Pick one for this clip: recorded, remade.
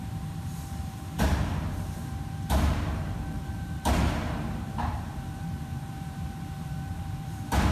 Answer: remade